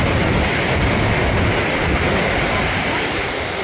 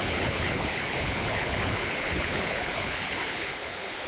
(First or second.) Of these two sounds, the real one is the first